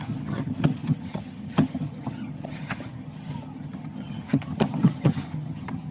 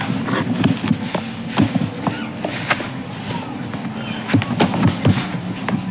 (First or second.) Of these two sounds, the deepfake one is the first